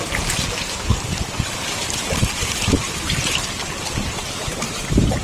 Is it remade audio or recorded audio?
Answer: remade